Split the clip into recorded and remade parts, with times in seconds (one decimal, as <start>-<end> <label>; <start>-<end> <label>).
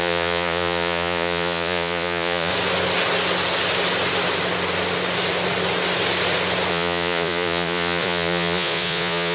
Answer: 0.0-2.5 remade; 2.5-6.7 recorded; 6.7-9.3 remade